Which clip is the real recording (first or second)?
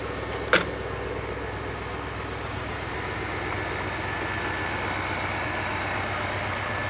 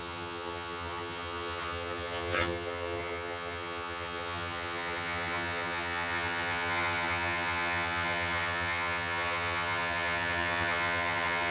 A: first